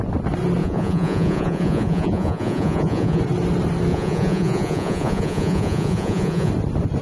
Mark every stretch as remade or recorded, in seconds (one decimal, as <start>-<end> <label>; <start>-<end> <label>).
0.0-0.6 recorded; 0.6-3.2 remade; 3.2-3.9 recorded; 3.9-6.5 remade; 6.5-7.0 recorded